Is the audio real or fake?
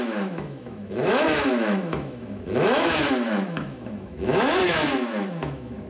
fake